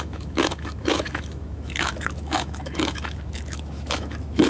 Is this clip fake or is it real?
fake